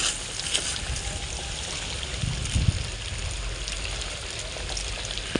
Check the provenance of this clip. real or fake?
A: real